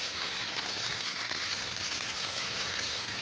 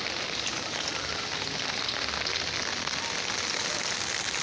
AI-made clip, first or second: first